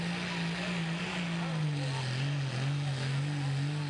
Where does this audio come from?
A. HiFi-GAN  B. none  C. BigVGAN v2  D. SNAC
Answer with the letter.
B